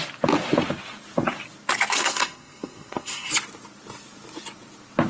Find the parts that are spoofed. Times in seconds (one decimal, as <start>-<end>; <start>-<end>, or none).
2.0-3.3